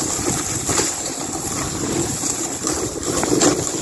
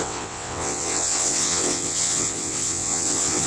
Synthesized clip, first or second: second